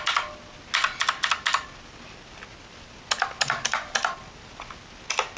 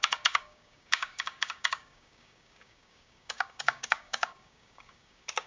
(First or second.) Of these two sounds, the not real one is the second